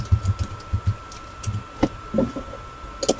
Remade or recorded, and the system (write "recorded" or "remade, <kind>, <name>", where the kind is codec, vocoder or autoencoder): recorded